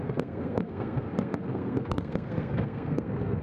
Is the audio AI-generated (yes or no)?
yes